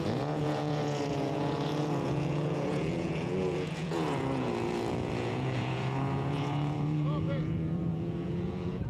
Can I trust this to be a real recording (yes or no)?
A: no